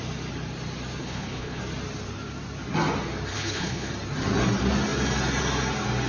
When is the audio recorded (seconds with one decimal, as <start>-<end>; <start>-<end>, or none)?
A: 0.0-1.0; 1.6-3.3; 3.9-6.1